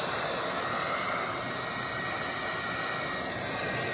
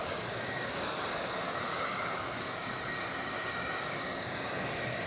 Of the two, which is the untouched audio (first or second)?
first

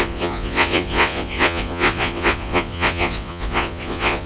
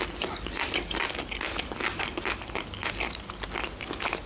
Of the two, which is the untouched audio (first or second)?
second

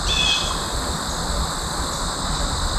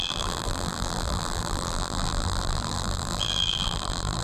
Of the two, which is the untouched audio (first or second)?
first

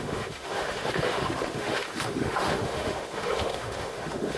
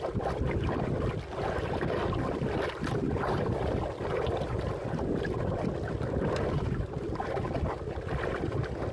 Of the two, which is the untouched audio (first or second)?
second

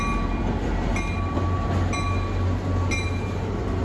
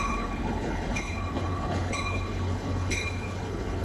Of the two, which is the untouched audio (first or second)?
first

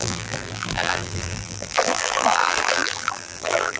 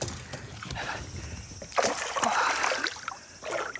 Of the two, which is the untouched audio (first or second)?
second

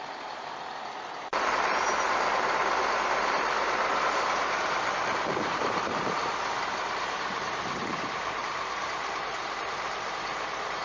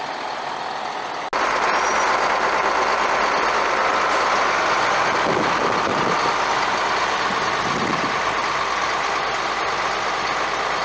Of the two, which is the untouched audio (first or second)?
second